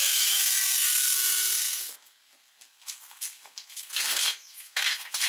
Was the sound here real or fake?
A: fake